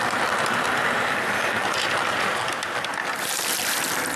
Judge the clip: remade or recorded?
recorded